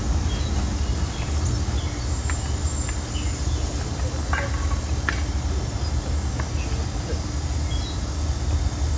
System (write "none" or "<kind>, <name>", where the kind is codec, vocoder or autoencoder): none